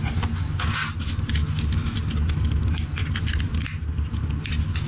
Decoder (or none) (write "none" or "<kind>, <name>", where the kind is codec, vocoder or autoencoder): none